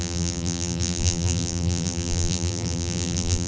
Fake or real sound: fake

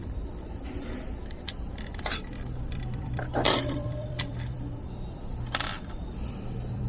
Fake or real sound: fake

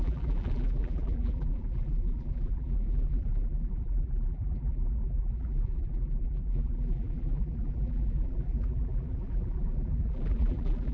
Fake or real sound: fake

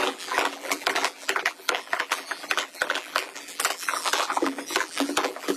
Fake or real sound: fake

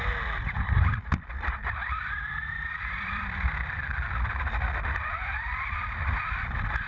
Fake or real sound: fake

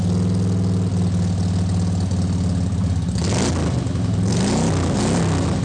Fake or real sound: real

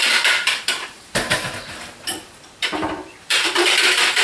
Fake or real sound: fake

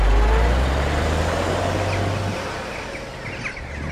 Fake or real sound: real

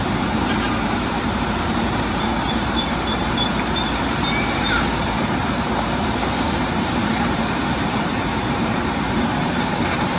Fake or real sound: fake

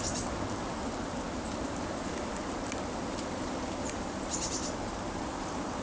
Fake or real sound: fake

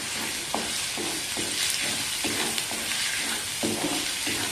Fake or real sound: real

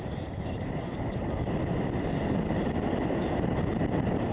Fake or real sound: fake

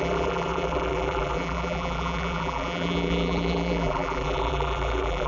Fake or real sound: fake